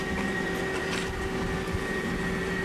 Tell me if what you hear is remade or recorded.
recorded